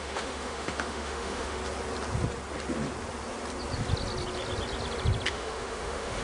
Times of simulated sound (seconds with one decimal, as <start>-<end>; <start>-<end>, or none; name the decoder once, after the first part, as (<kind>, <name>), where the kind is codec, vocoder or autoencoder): 0.0-1.6 (autoencoder, DAC-VAE); 5.3-6.2